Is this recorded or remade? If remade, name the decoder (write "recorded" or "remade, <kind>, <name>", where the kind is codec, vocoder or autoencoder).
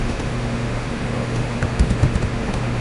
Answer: remade, autoencoder, DAC-VAE